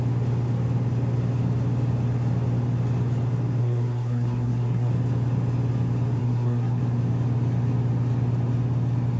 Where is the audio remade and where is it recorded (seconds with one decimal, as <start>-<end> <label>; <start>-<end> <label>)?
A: 0.0-3.6 recorded; 3.6-4.9 remade; 4.9-6.2 recorded; 6.2-6.8 remade; 6.8-9.2 recorded